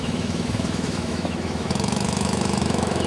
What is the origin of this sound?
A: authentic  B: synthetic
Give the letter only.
B